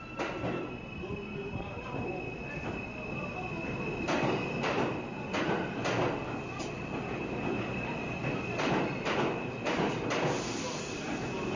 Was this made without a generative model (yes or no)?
yes